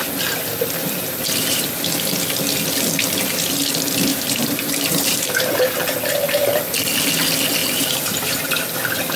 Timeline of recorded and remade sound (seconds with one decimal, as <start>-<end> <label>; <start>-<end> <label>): 0.0-0.8 recorded; 0.8-1.6 remade; 1.6-4.1 recorded; 4.1-5.4 remade; 5.4-7.6 recorded; 7.6-8.4 remade; 8.4-9.2 recorded